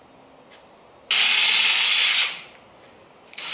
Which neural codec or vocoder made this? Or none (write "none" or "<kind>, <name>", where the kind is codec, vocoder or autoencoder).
none